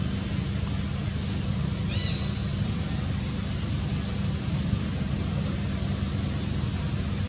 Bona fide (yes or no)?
yes